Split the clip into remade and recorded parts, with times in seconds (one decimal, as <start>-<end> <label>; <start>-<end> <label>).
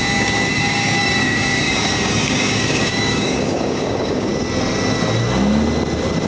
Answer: 0.0-4.3 remade; 4.3-6.3 recorded